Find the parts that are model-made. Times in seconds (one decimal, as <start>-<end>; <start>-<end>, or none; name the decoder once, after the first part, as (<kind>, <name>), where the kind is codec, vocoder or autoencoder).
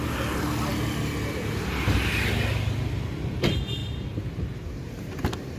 3.8-5.1 (vocoder, BigVGAN v2)